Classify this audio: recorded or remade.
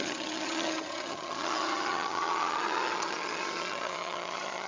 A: remade